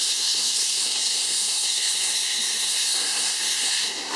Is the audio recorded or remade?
remade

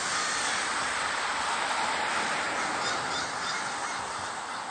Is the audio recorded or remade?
recorded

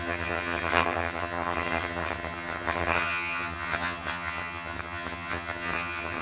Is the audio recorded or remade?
remade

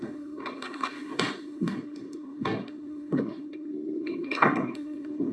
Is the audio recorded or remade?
remade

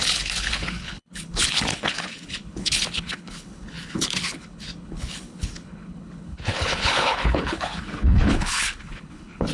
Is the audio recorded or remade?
remade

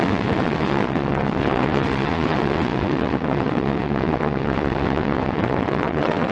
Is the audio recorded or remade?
remade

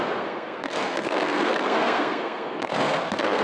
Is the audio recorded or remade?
remade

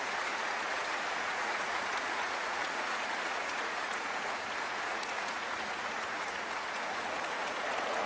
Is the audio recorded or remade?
remade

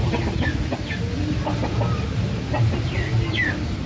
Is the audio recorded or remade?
recorded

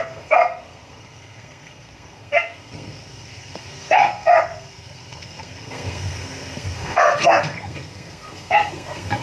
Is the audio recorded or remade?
remade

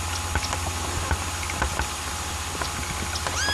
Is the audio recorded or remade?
recorded